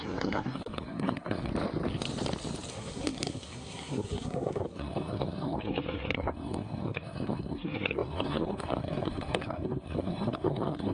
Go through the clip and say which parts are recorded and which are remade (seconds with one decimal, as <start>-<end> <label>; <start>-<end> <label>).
0.0-1.5 remade; 1.5-2.7 recorded; 2.7-10.9 remade

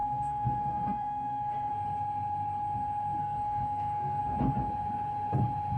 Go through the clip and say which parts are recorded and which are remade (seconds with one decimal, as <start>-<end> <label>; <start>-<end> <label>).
0.0-1.7 remade; 1.7-3.2 recorded; 3.2-4.2 remade; 4.2-5.8 recorded

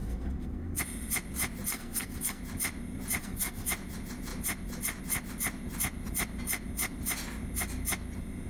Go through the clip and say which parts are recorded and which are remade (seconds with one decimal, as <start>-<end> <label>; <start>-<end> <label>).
0.0-0.8 remade; 0.8-1.7 recorded; 1.7-2.4 remade; 2.4-3.2 recorded; 3.2-3.7 remade; 3.7-8.5 recorded

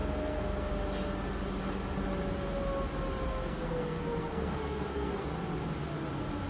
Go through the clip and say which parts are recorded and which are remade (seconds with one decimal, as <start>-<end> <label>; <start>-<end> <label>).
0.0-0.7 remade; 0.7-3.3 recorded; 3.3-5.3 remade; 5.3-6.5 recorded

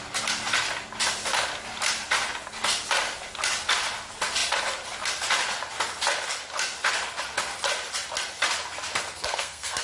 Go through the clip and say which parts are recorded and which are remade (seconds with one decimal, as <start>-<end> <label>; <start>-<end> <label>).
0.0-9.1 recorded; 9.1-9.8 remade